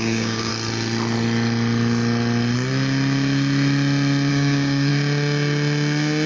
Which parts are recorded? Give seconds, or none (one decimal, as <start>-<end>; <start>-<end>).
0.5-4.3; 4.9-6.3